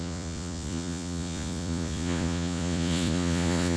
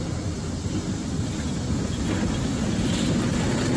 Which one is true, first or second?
second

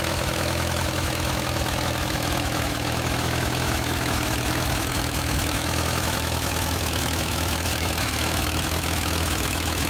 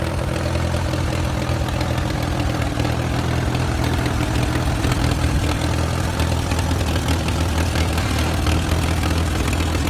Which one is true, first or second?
second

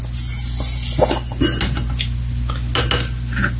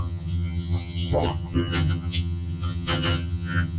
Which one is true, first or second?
first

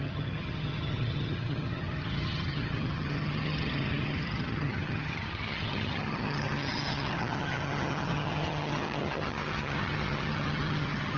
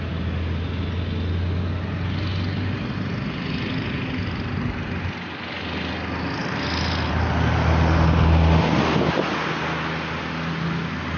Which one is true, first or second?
second